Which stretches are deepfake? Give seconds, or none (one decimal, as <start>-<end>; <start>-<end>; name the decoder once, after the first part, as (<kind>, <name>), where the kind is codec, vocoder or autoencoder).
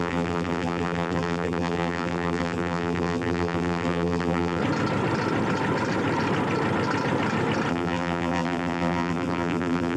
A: 0.0-4.6 (vocoder, BigVGAN v2); 7.7-10.0